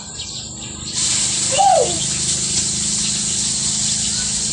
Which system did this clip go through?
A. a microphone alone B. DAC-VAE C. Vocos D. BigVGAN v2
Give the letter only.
A